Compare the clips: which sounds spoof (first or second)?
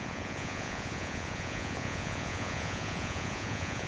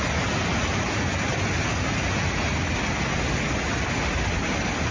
first